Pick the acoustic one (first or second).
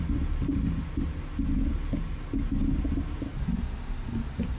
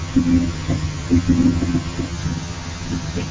first